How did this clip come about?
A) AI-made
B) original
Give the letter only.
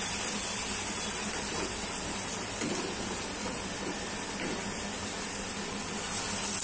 B